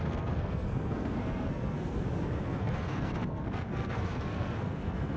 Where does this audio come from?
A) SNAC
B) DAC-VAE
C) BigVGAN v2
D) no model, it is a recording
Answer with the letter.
A